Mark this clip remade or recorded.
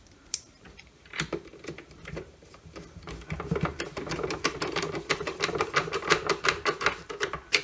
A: remade